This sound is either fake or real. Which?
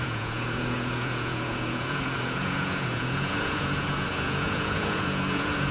fake